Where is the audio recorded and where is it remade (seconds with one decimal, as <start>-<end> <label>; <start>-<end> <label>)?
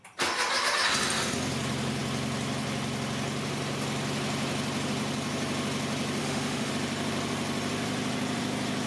0.0-6.2 recorded; 6.2-6.7 remade; 6.7-8.9 recorded